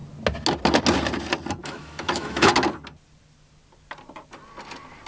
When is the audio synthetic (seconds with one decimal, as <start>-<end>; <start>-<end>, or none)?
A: 1.6-2.5